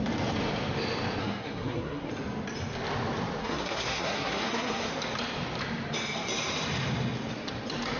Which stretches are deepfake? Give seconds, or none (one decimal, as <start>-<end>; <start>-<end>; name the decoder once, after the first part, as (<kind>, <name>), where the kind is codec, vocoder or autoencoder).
1.2-2.1 (codec, SNAC); 3.4-4.9